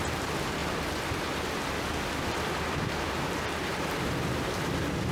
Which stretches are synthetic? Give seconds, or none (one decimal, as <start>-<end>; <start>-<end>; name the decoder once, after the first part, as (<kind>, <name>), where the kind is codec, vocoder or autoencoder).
0.0-0.6 (vocoder, BigVGAN v2); 1.3-5.1